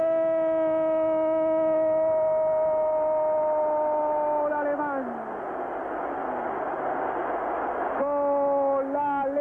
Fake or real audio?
real